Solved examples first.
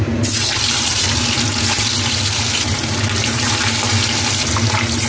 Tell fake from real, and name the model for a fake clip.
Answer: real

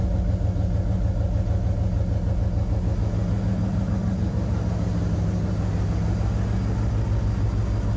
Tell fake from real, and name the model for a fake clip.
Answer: real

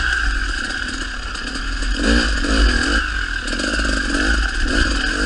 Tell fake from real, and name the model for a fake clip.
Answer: real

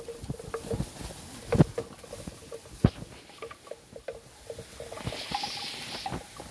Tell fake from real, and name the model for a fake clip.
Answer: real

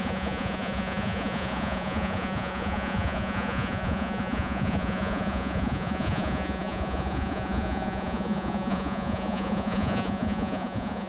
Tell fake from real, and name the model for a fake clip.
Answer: fake, vocoder, Vocos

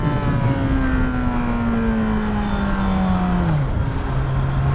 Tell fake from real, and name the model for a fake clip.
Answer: real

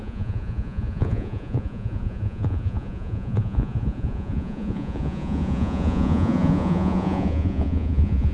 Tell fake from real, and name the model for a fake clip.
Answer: fake, vocoder, Vocos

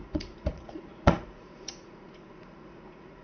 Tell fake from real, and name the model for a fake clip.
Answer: fake, vocoder, Vocos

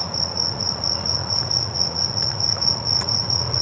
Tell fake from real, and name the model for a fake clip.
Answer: fake, vocoder, Vocos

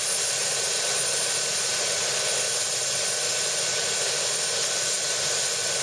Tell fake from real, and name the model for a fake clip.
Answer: real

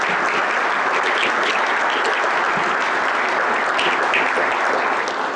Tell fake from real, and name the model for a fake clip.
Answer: real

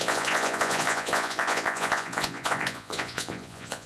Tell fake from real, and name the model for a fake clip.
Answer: fake, vocoder, Vocos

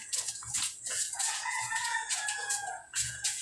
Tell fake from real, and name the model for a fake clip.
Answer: fake, vocoder, Vocos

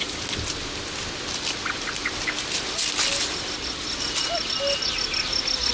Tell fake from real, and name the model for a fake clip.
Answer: real